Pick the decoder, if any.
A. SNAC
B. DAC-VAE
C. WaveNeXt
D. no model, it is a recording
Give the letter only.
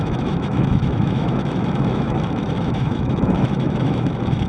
B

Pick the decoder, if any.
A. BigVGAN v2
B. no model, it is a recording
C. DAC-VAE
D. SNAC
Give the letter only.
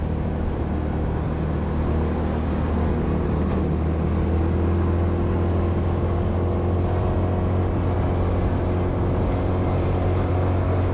B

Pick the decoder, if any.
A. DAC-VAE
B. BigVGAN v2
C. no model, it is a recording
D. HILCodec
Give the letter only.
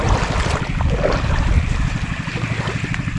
C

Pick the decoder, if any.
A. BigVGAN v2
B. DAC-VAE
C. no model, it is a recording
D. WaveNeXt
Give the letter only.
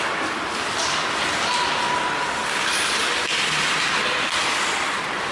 C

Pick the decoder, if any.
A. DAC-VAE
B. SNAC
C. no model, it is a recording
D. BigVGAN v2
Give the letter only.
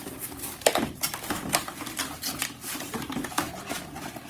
C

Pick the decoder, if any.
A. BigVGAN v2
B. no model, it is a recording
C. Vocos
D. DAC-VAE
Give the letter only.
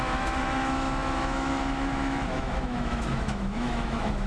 D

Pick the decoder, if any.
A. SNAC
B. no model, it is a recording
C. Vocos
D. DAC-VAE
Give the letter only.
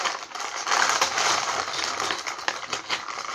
B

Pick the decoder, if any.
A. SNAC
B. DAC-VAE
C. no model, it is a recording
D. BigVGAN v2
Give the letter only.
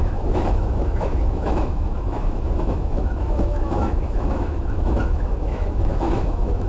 B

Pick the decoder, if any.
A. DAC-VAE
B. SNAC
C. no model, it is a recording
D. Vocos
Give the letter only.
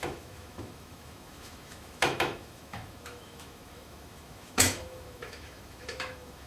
A